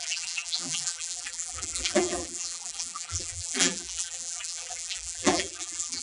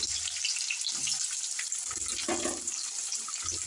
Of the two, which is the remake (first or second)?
first